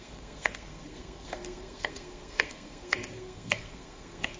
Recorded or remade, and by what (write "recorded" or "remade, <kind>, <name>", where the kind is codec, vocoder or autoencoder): remade, codec, SNAC